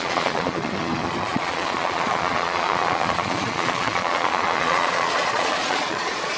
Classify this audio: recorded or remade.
remade